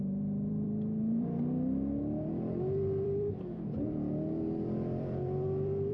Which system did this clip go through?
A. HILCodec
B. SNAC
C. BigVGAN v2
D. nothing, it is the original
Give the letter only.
C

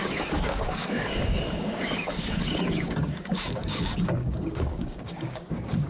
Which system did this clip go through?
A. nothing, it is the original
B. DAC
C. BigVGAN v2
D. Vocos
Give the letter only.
B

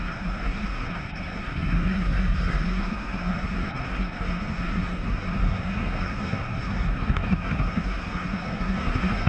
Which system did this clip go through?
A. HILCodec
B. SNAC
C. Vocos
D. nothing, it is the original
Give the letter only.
B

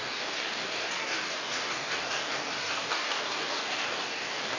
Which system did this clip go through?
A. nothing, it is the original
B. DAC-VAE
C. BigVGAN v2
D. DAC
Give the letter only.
D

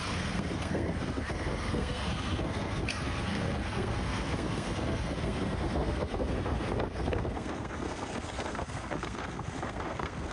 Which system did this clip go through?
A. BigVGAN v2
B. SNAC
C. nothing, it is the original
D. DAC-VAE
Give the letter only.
B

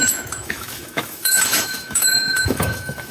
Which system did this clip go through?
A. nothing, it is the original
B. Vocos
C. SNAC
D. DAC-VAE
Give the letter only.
D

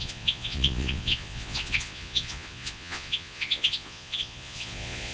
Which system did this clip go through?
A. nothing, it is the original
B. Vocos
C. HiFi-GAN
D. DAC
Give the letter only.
B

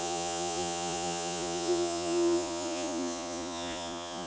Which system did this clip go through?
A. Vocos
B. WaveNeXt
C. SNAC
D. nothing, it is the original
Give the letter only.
A